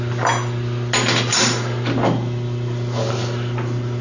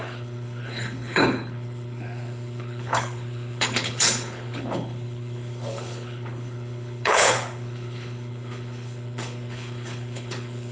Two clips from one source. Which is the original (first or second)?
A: first